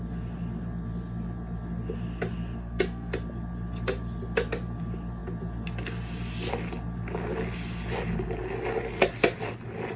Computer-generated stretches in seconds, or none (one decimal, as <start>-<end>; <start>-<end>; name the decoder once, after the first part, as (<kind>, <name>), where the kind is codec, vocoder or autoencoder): 2.6-3.1 (codec, SNAC)